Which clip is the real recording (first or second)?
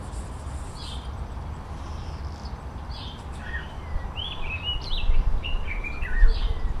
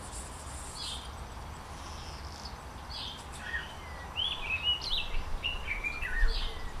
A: second